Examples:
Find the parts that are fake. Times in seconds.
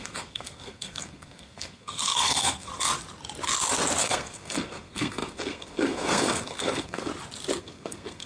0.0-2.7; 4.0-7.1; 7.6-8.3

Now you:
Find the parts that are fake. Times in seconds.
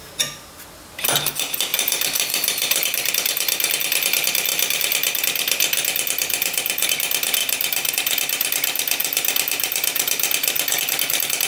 1.7-3.1; 4.5-5.2; 7.4-7.9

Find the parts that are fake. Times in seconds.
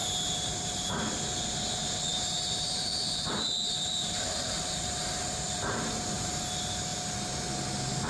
0.0-1.0; 2.1-6.4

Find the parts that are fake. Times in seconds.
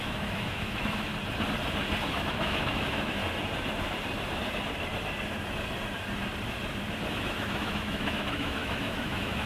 0.0-1.1; 2.1-3.2; 7.1-9.5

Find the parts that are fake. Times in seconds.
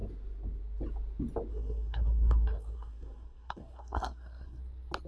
1.5-4.6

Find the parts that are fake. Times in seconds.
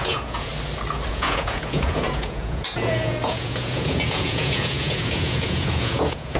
0.0-0.5; 1.1-6.4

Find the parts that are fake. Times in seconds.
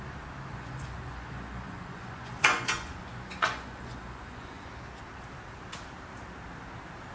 0.5-4.7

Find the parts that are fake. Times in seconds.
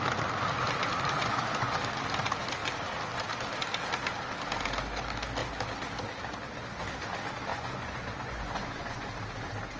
1.2-1.8; 7.5-9.1